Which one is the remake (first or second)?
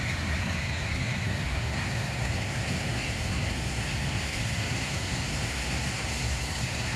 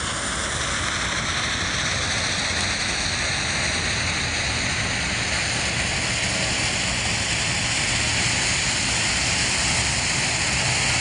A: first